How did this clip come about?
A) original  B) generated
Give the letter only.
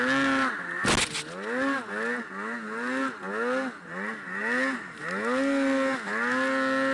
A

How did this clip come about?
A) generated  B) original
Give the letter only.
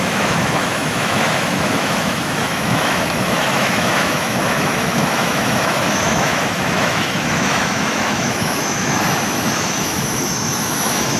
A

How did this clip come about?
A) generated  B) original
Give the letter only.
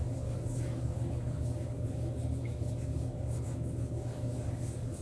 A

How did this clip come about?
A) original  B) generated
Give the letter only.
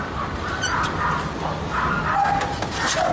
A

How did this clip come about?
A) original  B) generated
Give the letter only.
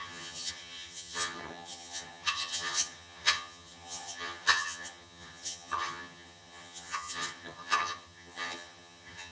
B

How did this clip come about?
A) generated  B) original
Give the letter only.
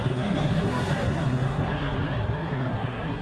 A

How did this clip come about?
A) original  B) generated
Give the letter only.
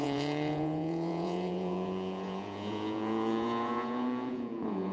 B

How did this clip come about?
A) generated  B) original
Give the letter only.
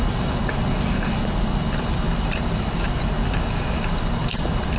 B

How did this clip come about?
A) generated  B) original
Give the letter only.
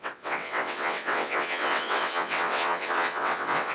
A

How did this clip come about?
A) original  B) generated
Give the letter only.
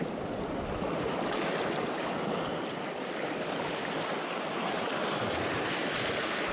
A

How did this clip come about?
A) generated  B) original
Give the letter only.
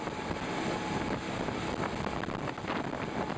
B